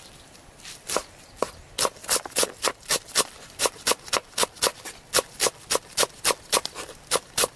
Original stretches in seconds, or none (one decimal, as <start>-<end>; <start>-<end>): 0.0-2.0; 3.6-7.6